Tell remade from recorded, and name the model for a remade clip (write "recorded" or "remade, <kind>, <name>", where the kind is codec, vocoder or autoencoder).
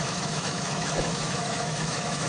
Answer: remade, autoencoder, DAC-VAE